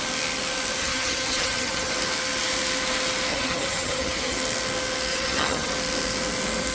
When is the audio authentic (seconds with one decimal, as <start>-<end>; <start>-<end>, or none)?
0.0-0.8; 1.9-3.3; 4.4-5.1; 5.7-6.7